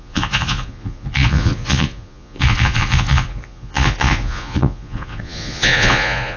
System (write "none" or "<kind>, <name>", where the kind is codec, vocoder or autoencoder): vocoder, Vocos